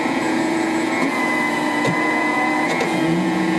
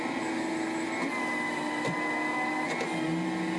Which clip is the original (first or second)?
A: second